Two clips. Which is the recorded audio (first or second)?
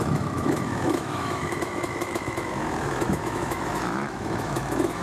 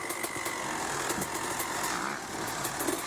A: second